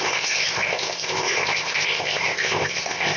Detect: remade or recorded remade